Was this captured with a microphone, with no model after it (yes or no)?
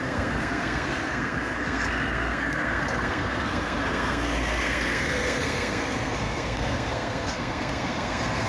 no